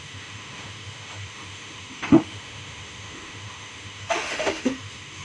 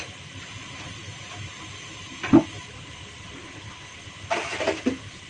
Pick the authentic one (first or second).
second